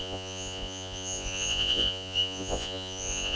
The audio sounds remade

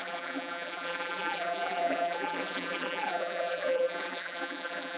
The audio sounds remade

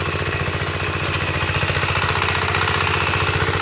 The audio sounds recorded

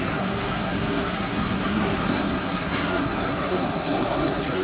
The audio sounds remade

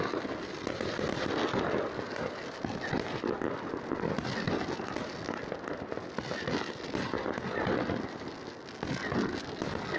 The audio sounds recorded